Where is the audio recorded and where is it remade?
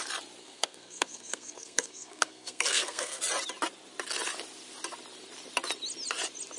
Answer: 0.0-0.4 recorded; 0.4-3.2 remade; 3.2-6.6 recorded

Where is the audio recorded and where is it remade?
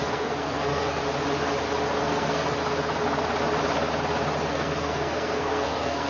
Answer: 0.0-1.0 remade; 1.0-2.0 recorded; 2.0-2.6 remade; 2.6-4.5 recorded; 4.5-6.1 remade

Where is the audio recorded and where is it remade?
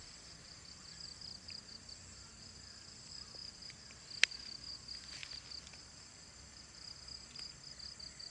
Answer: 0.0-3.4 recorded; 3.4-4.3 remade; 4.3-8.3 recorded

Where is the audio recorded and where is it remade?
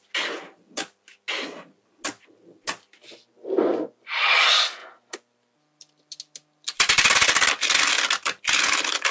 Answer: 0.0-9.1 recorded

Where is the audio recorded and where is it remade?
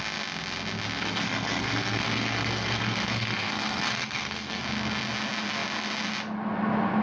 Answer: 0.0-1.0 recorded; 1.0-4.6 remade; 4.6-7.0 recorded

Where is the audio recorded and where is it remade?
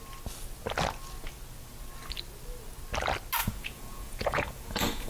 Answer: 0.0-3.4 recorded; 3.4-5.1 remade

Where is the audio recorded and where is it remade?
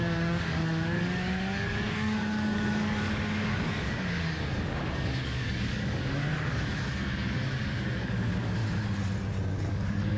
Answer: 0.0-8.6 remade; 8.6-9.7 recorded; 9.7-10.2 remade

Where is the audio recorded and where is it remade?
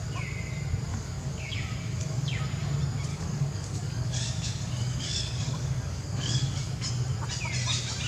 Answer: 0.0-0.9 recorded; 0.9-2.4 remade; 2.4-3.1 recorded; 3.1-6.9 remade; 6.9-8.1 recorded